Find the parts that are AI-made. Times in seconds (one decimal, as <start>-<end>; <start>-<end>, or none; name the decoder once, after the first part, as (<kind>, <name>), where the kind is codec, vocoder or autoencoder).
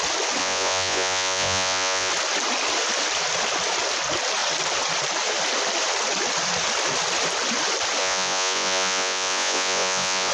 0.4-2.1 (vocoder, Vocos); 8.0-10.3